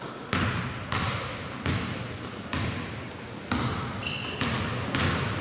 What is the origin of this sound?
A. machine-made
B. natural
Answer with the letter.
B